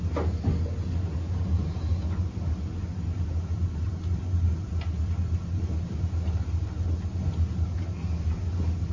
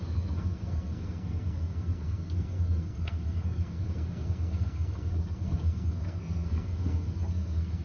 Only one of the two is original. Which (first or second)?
first